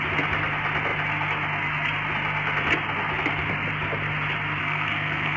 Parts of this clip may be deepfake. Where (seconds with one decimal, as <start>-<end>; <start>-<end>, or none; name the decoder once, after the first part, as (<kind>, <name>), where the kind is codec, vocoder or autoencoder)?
4.6-5.4 (codec, SNAC)